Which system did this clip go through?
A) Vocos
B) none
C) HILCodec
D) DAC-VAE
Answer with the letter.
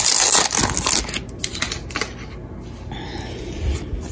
B